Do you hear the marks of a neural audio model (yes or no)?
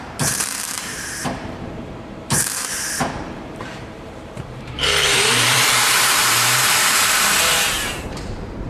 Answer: yes